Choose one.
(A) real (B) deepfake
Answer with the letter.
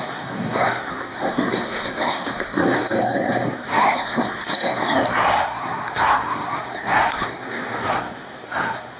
B